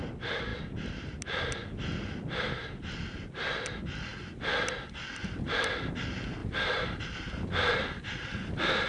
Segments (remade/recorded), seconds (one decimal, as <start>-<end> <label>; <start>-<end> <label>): 0.0-6.4 recorded; 6.4-7.0 remade; 7.0-8.9 recorded